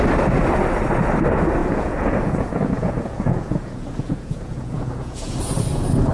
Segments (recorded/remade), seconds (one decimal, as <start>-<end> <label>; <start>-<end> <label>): 0.0-1.6 recorded; 1.6-5.3 remade; 5.3-6.1 recorded